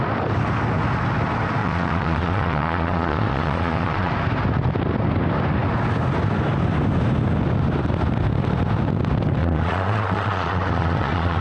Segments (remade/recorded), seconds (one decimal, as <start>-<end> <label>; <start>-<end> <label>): 0.0-1.6 recorded; 1.6-4.1 remade; 4.1-9.4 recorded; 9.4-11.4 remade

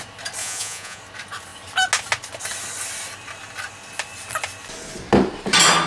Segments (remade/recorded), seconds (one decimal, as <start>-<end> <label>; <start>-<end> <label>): 0.0-0.4 recorded; 0.4-1.0 remade; 1.0-5.9 recorded

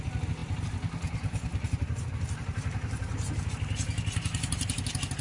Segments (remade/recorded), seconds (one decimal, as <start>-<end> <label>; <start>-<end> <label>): 0.0-5.2 recorded